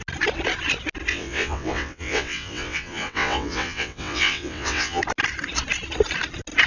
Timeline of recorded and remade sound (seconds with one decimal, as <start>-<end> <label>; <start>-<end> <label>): 0.0-1.1 recorded; 1.1-5.0 remade; 5.0-6.7 recorded